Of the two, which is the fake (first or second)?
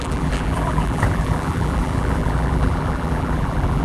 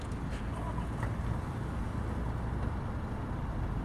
first